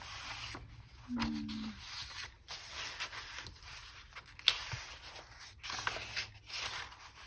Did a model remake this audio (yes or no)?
no